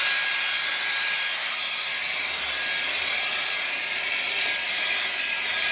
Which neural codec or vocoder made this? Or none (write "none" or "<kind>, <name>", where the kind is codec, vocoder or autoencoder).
none